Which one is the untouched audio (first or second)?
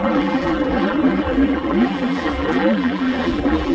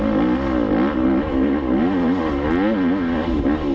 second